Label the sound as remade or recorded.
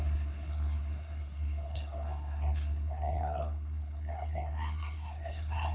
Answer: remade